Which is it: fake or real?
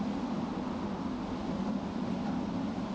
real